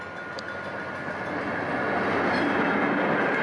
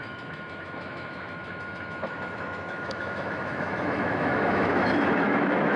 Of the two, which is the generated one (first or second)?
second